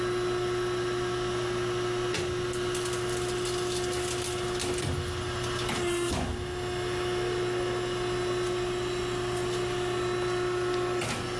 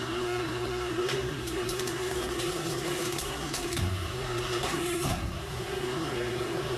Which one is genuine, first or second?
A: first